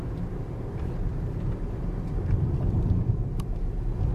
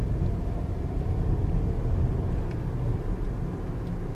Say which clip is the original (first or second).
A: second